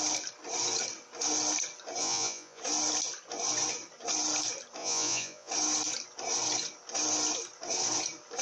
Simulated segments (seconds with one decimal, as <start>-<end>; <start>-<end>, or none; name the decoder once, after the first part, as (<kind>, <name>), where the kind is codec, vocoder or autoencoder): 2.0-2.6 (vocoder, Vocos); 4.8-5.5